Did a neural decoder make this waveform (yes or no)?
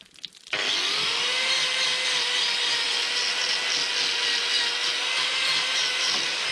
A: no